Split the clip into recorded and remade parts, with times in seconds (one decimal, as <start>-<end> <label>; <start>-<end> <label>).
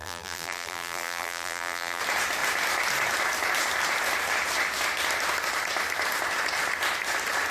0.0-2.0 remade; 2.0-7.5 recorded